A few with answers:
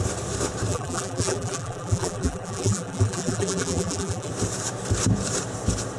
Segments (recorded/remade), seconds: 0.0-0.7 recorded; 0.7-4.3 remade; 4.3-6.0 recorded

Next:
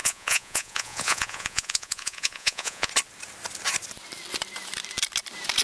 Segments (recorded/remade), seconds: 0.0-2.9 remade; 2.9-5.6 recorded

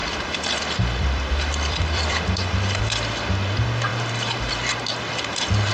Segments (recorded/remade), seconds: 0.0-2.8 remade; 2.8-3.9 recorded; 3.9-4.5 remade; 4.5-5.7 recorded